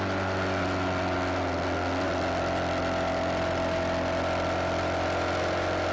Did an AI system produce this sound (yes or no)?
no